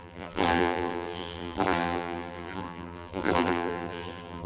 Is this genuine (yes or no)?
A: no